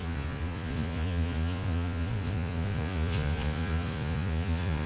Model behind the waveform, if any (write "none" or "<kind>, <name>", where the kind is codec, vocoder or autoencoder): vocoder, Vocos